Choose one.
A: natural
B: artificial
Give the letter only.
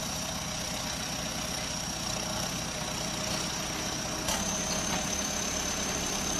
A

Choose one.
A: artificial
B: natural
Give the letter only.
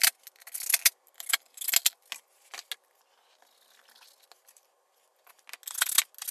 B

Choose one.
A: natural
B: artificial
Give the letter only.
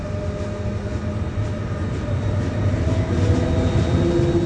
A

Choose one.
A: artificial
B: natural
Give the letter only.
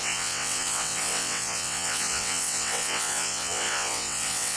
A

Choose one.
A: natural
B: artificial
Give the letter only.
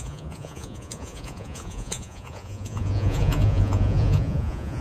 B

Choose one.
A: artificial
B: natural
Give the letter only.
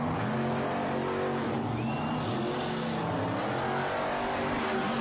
B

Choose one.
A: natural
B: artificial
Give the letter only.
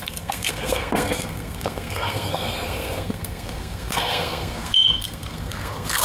B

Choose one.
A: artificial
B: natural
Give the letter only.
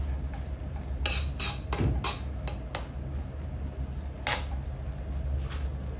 B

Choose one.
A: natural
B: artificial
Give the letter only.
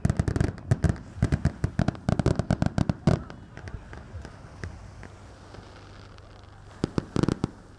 A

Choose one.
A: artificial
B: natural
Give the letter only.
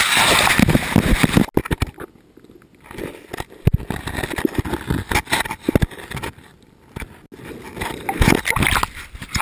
B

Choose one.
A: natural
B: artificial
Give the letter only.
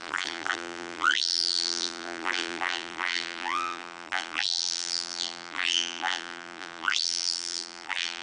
B